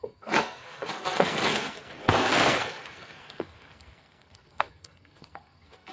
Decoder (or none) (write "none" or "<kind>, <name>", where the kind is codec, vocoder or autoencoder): codec, SNAC